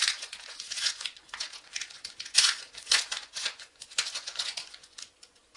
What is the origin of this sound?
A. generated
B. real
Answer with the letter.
A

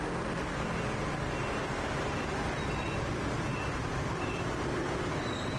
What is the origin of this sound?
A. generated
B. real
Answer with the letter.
B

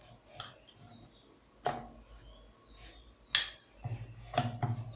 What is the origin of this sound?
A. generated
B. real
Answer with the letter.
B